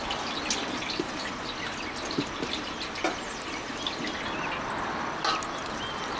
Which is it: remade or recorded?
recorded